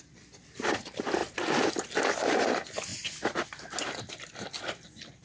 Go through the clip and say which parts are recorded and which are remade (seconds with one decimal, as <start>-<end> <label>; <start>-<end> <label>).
0.0-5.2 recorded